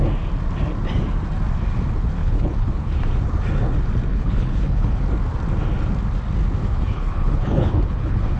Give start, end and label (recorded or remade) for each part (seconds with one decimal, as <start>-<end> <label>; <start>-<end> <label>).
0.0-2.2 recorded; 2.2-2.9 remade; 2.9-4.1 recorded; 4.1-5.0 remade; 5.0-6.6 recorded; 6.6-8.4 remade